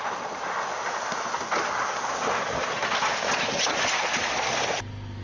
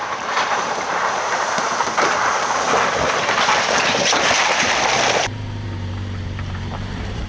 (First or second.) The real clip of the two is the first